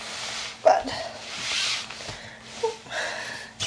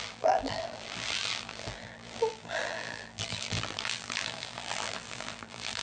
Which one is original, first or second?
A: first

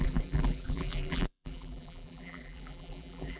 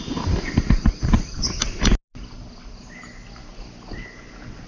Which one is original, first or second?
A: second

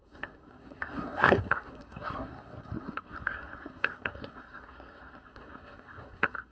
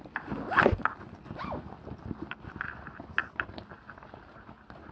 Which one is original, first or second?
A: second